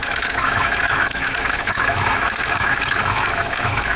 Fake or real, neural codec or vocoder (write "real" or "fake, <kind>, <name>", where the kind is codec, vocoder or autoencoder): fake, autoencoder, DAC-VAE